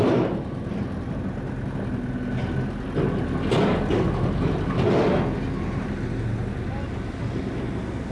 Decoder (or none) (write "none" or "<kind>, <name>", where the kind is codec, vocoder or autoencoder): none